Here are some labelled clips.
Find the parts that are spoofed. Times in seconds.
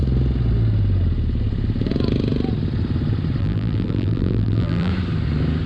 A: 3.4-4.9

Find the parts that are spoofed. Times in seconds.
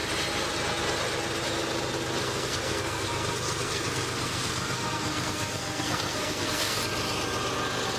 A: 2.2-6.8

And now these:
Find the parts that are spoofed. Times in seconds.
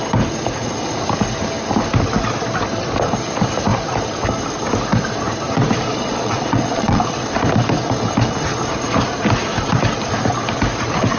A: 5.9-7.0